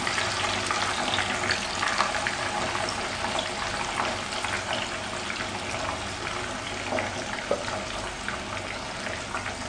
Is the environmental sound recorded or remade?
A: recorded